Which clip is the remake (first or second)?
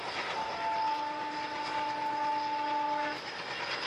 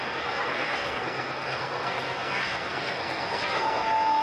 second